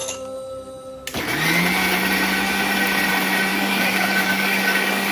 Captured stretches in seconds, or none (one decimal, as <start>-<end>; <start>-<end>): 0.0-3.5